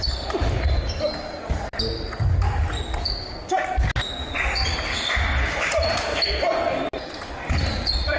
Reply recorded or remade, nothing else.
recorded